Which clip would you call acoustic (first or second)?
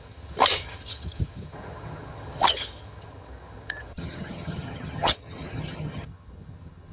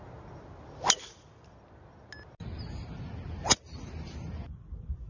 second